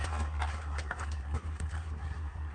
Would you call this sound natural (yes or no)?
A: no